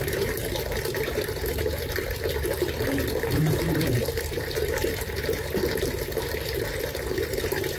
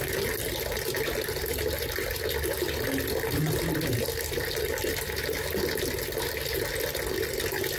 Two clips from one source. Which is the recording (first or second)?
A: second